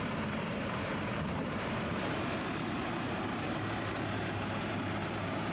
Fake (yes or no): yes